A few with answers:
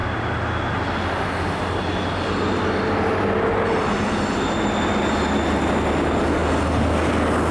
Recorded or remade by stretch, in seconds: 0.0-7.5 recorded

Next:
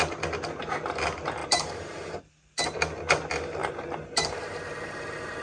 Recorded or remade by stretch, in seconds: 0.0-1.4 recorded; 1.4-2.2 remade; 2.2-5.4 recorded

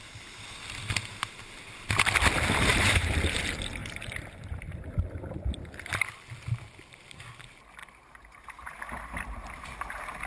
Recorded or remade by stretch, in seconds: 0.0-2.7 recorded; 2.7-3.4 remade; 3.4-3.8 recorded; 3.8-5.9 remade; 5.9-7.8 recorded; 7.8-8.8 remade; 8.8-10.3 recorded

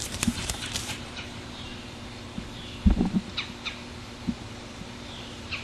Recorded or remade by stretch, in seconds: 0.0-1.7 remade; 1.7-5.1 recorded; 5.1-5.6 remade